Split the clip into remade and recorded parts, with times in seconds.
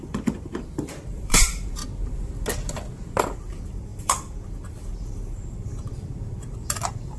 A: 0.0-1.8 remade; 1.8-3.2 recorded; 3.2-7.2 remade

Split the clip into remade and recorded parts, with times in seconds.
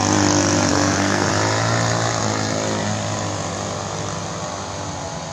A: 0.0-0.7 recorded; 0.7-1.3 remade; 1.3-5.3 recorded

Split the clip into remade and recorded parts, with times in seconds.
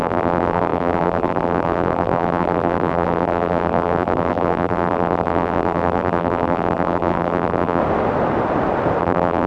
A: 0.0-7.8 remade; 7.8-9.0 recorded; 9.0-9.5 remade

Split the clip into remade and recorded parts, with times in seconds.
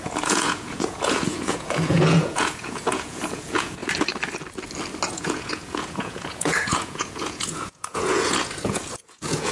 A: 0.0-3.8 remade; 3.8-5.1 recorded; 5.1-9.5 remade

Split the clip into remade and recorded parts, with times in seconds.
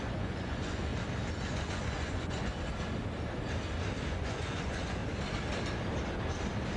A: 0.0-0.9 remade; 0.9-1.5 recorded; 1.5-2.5 remade; 2.5-4.1 recorded; 4.1-5.0 remade; 5.0-6.8 recorded